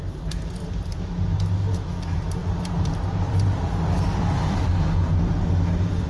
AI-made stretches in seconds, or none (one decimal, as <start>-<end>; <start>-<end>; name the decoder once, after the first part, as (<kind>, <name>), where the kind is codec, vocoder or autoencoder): 2.4-4.7 (vocoder, BigVGAN v2)